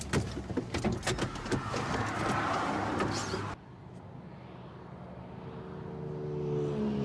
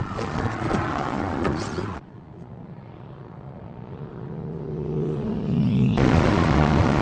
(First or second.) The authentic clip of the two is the first